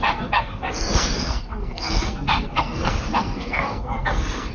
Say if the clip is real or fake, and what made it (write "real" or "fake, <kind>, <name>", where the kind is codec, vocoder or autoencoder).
fake, codec, SNAC